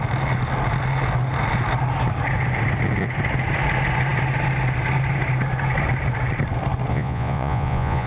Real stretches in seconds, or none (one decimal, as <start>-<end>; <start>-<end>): 0.0-6.9